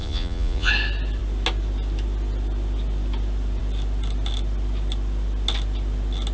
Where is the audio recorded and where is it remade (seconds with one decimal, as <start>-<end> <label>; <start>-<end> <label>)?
0.0-0.7 remade; 0.7-6.3 recorded